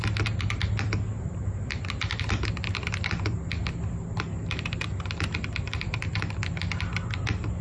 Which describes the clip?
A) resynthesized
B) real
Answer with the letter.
B